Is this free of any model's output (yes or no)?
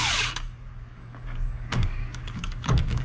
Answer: no